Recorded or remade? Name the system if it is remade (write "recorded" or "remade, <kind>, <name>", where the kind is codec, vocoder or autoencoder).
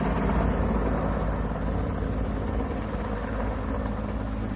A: recorded